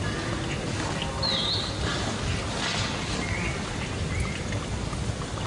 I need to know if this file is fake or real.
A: real